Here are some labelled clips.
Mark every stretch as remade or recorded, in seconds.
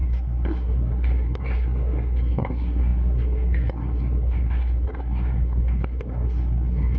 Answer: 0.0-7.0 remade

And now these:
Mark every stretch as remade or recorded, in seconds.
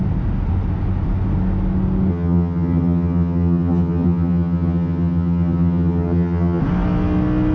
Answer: 0.0-2.1 recorded; 2.1-6.6 remade; 6.6-7.5 recorded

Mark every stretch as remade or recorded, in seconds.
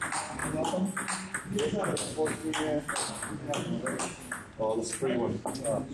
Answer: 0.0-0.4 recorded; 0.4-1.6 remade; 1.6-2.4 recorded; 2.4-3.1 remade; 3.1-5.9 recorded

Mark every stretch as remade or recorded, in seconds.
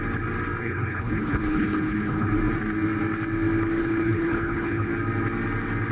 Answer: 0.0-0.6 recorded; 0.6-2.3 remade; 2.3-3.8 recorded; 3.8-4.9 remade; 4.9-5.9 recorded